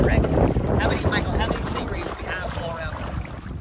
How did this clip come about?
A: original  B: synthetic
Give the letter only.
A